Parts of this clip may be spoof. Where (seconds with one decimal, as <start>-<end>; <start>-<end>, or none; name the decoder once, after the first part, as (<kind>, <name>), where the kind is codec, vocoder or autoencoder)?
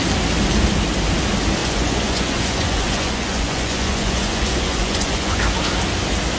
1.6-5.4 (vocoder, Vocos)